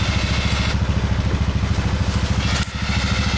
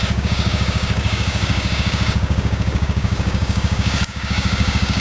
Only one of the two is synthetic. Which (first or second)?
second